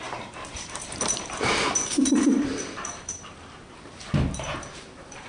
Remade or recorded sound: remade